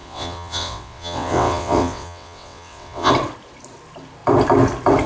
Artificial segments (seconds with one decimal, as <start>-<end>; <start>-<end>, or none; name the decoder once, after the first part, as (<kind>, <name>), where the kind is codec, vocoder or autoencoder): 0.0-3.1 (vocoder, WaveNeXt)